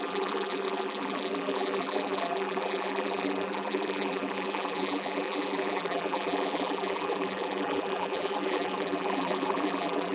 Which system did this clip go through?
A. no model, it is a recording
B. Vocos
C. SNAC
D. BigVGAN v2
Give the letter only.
D